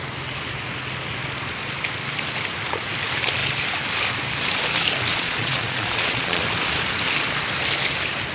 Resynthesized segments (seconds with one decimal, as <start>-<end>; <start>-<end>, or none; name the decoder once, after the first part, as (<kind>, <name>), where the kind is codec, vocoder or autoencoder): 5.1-6.4 (vocoder, Vocos)